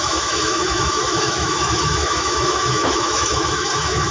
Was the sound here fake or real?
fake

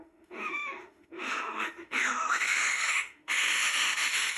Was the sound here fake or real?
fake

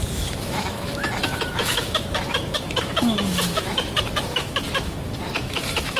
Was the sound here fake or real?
fake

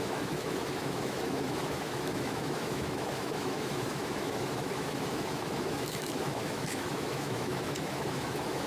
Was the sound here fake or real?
fake